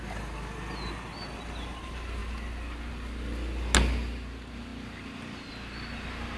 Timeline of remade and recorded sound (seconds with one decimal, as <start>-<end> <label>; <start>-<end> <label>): 0.0-6.4 recorded